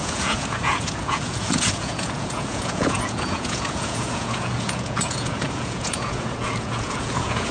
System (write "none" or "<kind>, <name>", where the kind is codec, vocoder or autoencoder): vocoder, Vocos